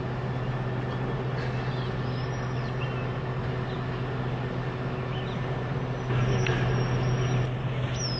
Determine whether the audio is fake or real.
real